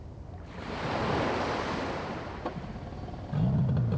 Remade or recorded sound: recorded